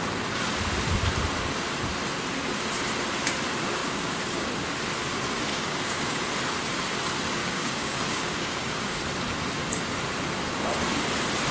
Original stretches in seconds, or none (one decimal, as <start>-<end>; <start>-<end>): 0.0-3.8; 4.5-5.5; 6.2-7.4; 9.0-11.5